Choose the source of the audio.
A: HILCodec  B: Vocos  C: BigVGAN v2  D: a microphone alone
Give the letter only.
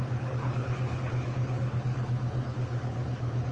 A